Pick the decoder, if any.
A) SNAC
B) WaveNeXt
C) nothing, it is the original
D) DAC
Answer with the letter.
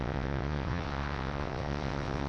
B